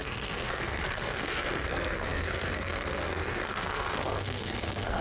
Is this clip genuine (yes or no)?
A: no